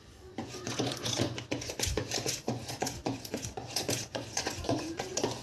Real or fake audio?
fake